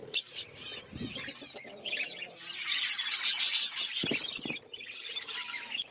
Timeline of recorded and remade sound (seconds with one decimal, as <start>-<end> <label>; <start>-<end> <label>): 0.0-5.9 recorded